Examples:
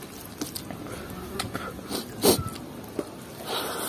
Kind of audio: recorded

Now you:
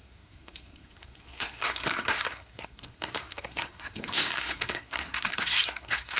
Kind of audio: remade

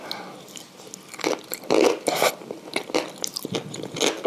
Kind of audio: recorded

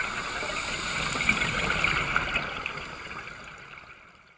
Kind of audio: recorded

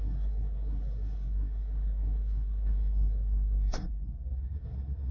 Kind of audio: remade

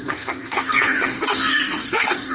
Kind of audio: remade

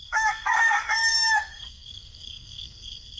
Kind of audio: remade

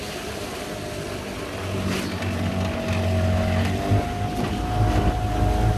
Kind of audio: recorded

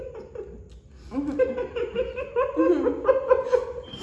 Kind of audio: recorded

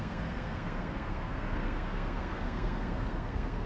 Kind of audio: remade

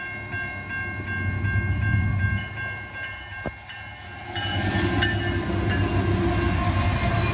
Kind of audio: recorded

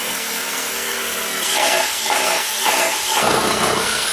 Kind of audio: remade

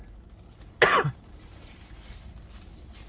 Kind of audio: recorded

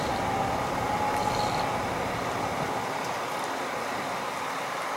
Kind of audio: recorded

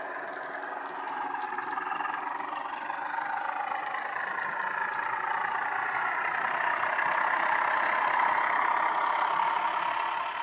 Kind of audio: recorded